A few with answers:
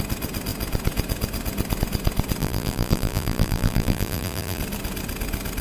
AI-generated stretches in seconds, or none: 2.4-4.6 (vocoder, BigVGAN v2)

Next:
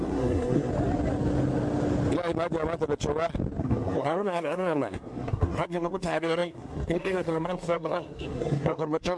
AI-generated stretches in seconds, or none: 0.0-0.7 (codec, SNAC); 3.6-9.2

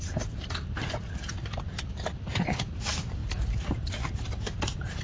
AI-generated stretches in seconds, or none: none

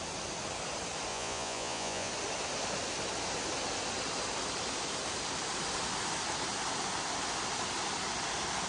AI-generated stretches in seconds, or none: 1.1-2.1 (vocoder, Vocos)

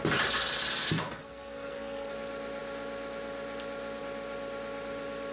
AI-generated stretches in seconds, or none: 1.2-2.1 (codec, SNAC)

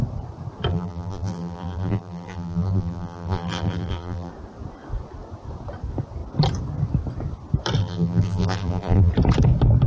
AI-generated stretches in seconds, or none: 0.7-4.3 (vocoder, BigVGAN v2); 7.8-9.1

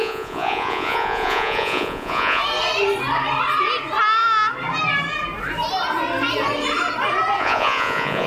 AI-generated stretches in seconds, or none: 0.0-2.4 (vocoder, Vocos); 7.4-8.3

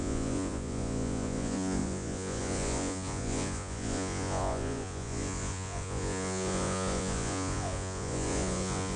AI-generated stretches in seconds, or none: 0.0-9.0 (vocoder, Vocos)